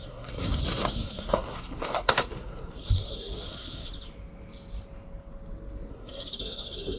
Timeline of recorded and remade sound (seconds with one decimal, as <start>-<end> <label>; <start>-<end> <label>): 0.0-3.9 remade; 3.9-5.9 recorded; 5.9-7.0 remade